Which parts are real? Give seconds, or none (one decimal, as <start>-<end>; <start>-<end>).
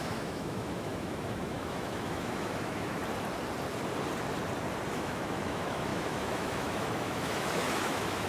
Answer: 3.0-4.9